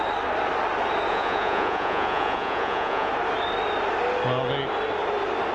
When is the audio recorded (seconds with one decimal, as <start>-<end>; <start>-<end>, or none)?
0.0-1.1; 3.1-5.5